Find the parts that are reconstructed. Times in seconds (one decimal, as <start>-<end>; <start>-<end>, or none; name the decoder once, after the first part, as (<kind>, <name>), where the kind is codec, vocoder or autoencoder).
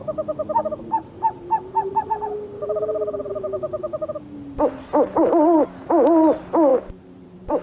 0.0-2.1 (vocoder, BigVGAN v2); 2.5-3.3; 6.7-7.6